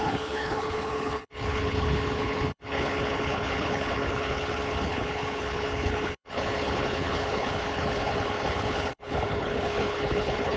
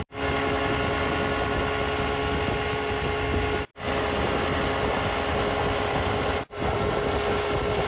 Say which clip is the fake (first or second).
first